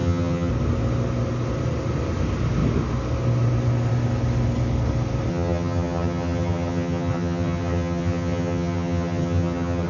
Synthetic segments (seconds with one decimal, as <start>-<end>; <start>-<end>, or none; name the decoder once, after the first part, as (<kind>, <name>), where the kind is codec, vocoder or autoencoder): 0.0-0.5 (vocoder, HiFi-GAN); 5.3-9.9